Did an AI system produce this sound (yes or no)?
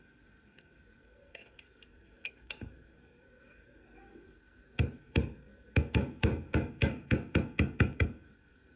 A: yes